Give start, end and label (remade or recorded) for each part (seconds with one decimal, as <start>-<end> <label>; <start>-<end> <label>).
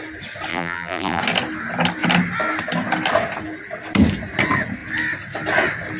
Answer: 0.0-0.5 recorded; 0.5-1.2 remade; 1.2-6.0 recorded